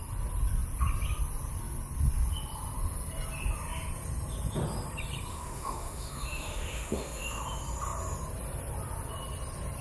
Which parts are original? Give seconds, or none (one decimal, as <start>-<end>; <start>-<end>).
0.0-5.3; 7.4-9.8